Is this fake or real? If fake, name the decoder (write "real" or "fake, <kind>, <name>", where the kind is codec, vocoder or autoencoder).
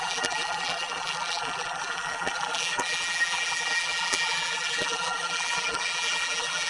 fake, vocoder, BigVGAN v2